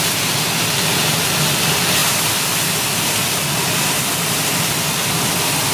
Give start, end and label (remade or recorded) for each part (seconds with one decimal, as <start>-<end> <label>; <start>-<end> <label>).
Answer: 0.0-5.7 recorded